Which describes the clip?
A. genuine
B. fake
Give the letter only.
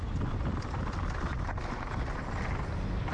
A